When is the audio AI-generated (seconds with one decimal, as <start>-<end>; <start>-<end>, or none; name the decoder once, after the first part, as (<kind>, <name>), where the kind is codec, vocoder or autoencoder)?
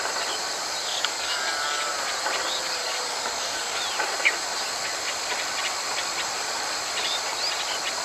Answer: 0.8-1.9 (codec, DAC); 2.8-3.8